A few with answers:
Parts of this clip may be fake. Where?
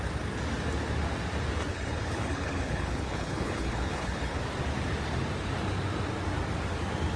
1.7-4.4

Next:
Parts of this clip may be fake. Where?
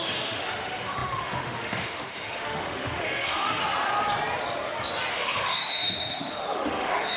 0.0-3.6; 5.1-7.2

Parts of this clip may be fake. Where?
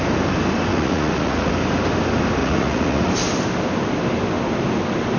0.7-1.5; 2.4-3.1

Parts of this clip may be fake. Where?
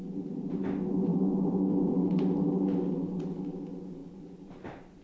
4.0-5.0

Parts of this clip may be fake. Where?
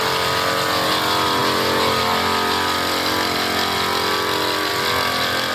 none